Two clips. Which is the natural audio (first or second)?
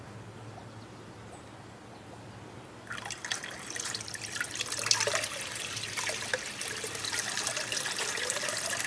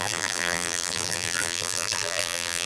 first